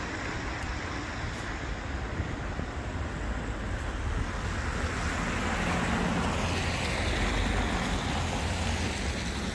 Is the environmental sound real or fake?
real